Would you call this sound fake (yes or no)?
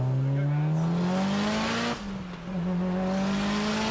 no